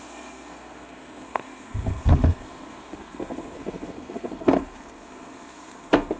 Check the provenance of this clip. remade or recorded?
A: remade